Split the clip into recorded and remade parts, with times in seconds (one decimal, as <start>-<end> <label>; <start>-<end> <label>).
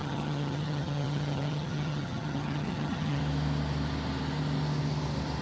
0.0-3.2 remade; 3.2-5.4 recorded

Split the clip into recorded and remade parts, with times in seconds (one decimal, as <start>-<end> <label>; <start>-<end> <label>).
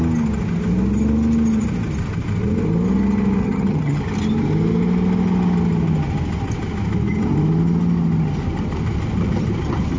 0.0-3.4 recorded; 3.4-4.0 remade; 4.0-10.0 recorded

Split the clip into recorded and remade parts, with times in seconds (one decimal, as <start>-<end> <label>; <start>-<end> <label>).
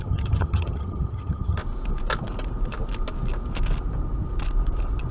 0.0-1.6 remade; 1.6-5.1 recorded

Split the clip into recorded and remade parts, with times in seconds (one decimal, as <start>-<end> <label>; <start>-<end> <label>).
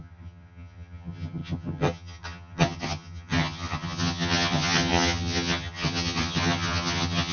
0.0-7.3 remade